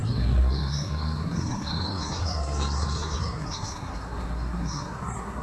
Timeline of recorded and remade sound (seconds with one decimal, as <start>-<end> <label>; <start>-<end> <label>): 0.0-5.4 remade